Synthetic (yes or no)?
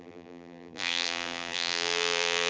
yes